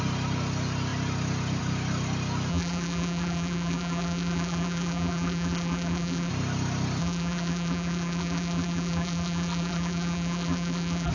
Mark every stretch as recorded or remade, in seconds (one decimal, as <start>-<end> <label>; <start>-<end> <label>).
0.0-2.5 recorded; 2.5-6.3 remade; 6.3-7.0 recorded; 7.0-11.1 remade